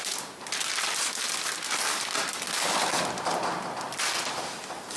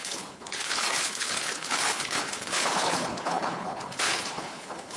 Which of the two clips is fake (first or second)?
second